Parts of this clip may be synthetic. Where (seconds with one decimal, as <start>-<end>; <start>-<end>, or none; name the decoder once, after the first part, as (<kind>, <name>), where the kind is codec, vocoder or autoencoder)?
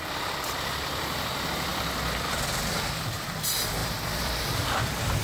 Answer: 0.0-5.2 (vocoder, BigVGAN v2)